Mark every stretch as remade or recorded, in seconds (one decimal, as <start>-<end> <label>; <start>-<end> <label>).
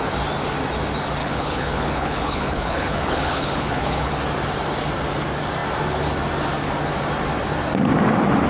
0.0-1.2 recorded; 1.2-4.1 remade; 4.1-8.5 recorded